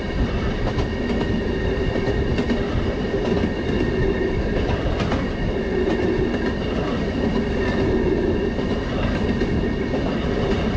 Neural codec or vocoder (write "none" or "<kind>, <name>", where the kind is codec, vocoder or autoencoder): none